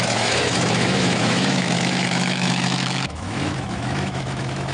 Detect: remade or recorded remade